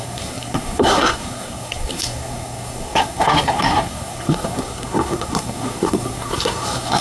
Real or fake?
fake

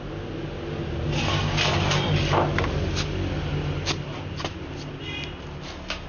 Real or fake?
real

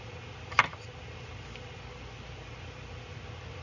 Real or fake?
real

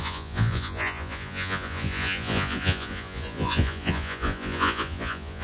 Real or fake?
fake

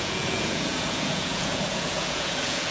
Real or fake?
fake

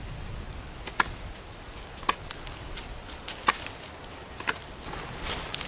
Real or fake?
real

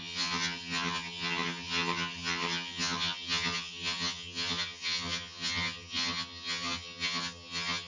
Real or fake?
fake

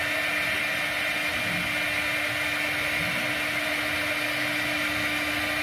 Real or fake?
real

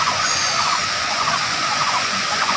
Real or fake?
fake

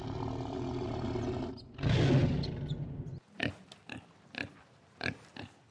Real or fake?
real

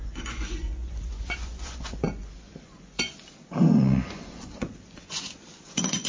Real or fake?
fake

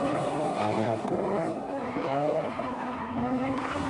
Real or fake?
fake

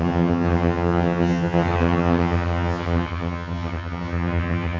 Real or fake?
fake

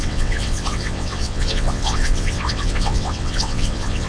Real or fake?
fake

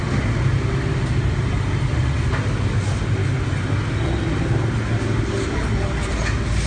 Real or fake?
real